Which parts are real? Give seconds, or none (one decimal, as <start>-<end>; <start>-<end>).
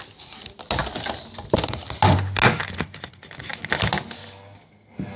0.0-5.2